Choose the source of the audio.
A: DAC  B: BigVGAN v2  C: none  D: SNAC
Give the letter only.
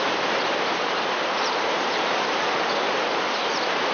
B